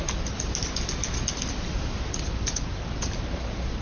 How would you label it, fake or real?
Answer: real